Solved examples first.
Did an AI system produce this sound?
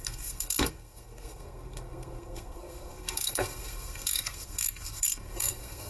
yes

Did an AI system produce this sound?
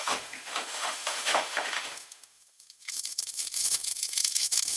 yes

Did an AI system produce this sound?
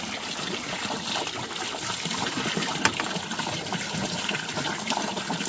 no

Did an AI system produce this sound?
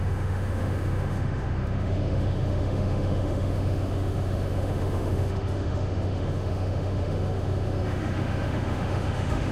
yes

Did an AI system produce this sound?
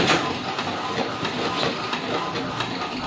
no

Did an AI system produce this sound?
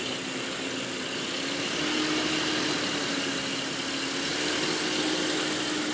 no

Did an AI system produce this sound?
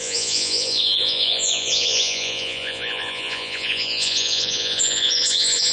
yes